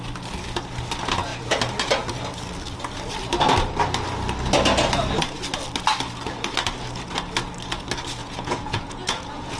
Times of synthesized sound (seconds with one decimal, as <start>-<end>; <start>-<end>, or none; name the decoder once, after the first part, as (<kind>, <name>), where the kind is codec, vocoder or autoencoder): 8.2-9.6 (vocoder, Vocos)